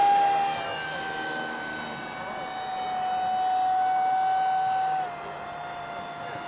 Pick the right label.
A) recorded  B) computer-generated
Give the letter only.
A